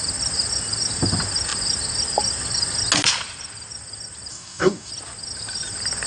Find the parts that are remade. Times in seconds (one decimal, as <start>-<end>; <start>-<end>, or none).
4.3-4.9